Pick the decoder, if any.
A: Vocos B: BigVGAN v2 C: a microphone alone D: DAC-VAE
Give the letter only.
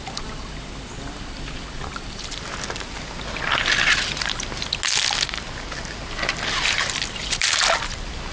C